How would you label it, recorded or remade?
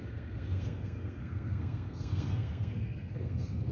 remade